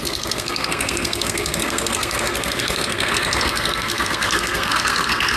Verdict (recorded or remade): remade